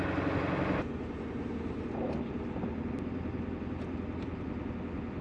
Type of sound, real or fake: real